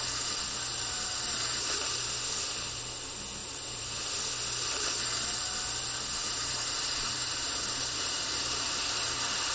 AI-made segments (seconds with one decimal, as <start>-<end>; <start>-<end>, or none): 0.7-1.9; 3.4-4.0; 6.2-9.1